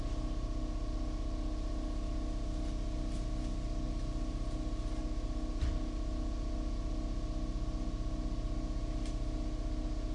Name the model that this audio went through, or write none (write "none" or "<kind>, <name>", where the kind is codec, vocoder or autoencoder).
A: none